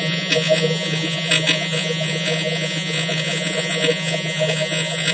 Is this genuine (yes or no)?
no